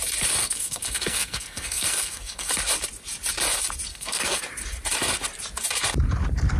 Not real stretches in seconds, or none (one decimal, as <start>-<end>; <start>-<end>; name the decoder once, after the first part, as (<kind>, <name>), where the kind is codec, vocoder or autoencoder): 0.4-2.5 (codec, SNAC); 3.9-4.4